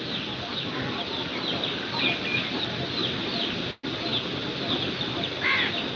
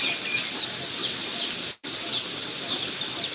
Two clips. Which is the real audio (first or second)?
first